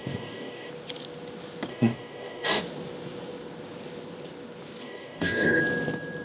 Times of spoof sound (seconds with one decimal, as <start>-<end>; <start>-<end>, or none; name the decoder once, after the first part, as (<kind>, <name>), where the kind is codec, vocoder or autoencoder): 0.0-0.7 (codec, DAC); 1.7-2.6; 4.8-5.6